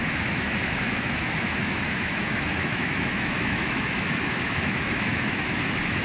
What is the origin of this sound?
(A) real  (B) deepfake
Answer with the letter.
B